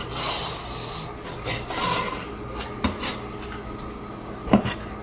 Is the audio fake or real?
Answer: real